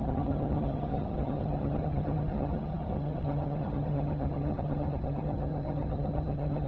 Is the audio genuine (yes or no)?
no